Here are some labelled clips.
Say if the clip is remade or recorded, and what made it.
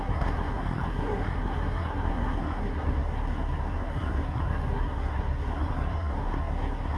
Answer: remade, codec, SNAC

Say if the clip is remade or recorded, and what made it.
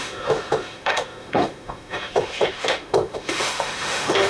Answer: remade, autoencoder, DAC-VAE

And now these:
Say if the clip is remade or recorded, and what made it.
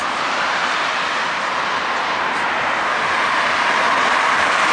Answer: remade, vocoder, BigVGAN v2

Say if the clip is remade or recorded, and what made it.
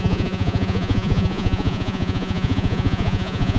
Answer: remade, vocoder, Vocos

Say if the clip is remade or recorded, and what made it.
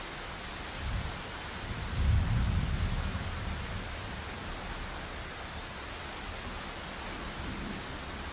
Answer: recorded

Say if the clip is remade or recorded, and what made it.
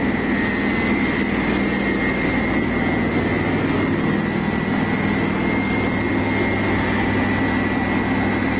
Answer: recorded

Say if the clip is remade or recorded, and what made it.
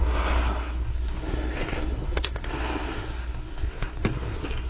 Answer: remade, codec, SNAC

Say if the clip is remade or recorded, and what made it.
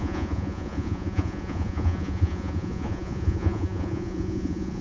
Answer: remade, vocoder, Vocos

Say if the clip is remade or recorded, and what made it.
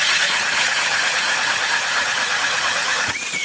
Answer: remade, vocoder, Vocos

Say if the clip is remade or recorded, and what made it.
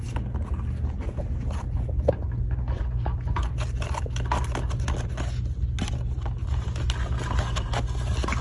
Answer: recorded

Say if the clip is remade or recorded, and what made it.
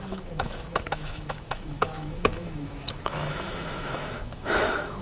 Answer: remade, autoencoder, DAC-VAE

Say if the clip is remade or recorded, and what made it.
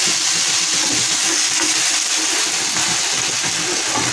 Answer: recorded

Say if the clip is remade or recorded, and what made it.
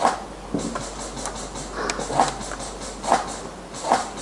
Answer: recorded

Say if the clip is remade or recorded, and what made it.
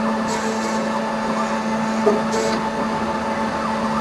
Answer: recorded